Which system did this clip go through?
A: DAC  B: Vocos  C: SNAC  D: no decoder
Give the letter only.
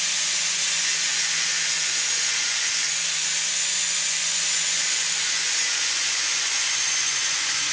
B